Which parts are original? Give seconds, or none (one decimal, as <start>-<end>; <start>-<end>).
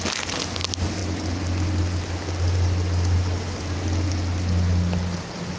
0.0-5.6